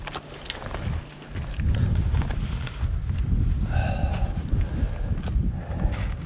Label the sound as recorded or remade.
recorded